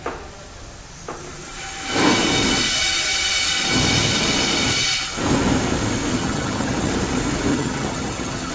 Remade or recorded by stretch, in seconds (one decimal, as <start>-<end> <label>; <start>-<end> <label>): 0.0-6.2 recorded; 6.2-6.9 remade; 6.9-7.5 recorded; 7.5-8.5 remade